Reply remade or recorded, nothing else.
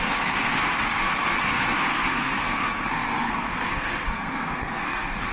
remade